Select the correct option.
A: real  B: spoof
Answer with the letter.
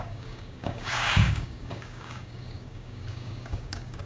B